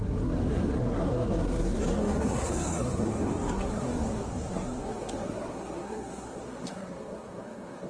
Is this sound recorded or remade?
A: remade